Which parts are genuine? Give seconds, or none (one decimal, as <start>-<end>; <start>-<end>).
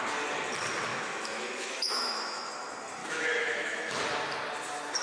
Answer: 0.0-0.9; 2.5-3.0; 4.0-5.0